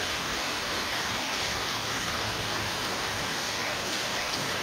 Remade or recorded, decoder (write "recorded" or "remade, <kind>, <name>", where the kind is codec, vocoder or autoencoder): remade, codec, DAC